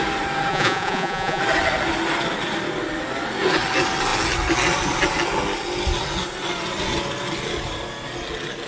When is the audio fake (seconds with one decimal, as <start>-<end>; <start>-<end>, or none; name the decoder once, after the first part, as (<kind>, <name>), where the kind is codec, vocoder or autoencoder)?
0.5-1.4 (vocoder, Vocos)